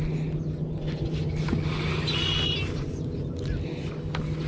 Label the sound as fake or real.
real